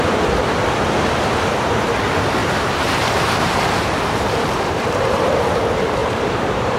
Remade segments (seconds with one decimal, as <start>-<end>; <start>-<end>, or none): 2.4-5.6; 6.0-6.8